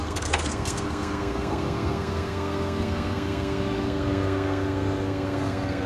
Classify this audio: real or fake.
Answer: fake